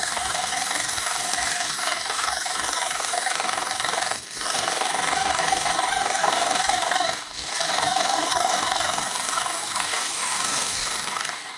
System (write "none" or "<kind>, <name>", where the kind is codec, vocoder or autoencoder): codec, DAC